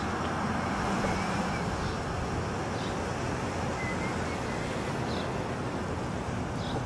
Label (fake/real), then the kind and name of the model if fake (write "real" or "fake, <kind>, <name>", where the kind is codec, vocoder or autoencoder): real